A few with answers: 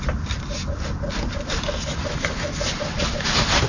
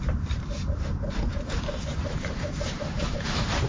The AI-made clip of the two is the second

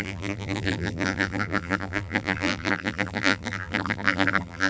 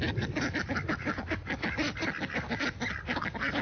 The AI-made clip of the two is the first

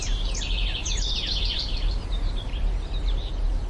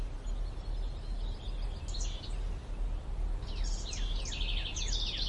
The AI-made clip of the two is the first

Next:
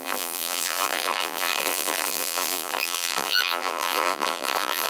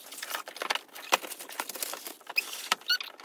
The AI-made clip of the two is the first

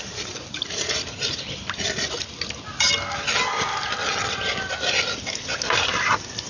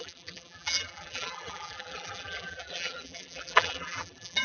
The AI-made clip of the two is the second